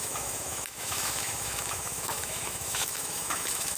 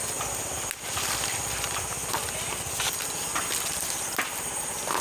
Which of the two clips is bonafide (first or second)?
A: second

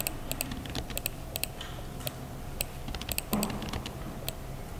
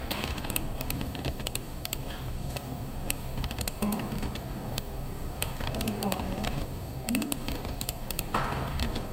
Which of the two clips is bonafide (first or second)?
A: first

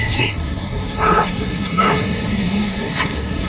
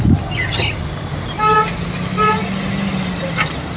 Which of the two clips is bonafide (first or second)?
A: second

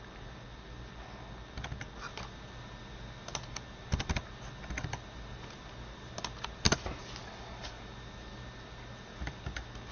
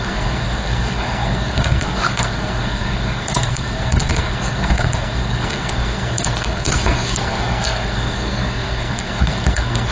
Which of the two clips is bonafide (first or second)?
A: first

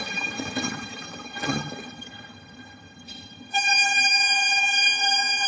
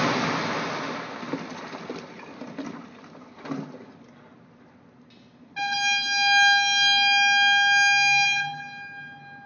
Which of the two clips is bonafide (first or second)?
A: second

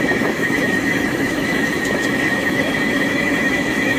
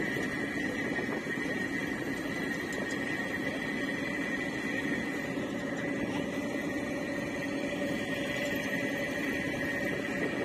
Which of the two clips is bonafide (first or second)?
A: second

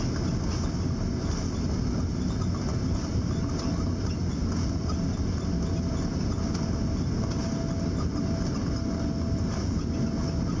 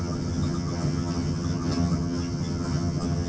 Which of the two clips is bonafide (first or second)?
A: first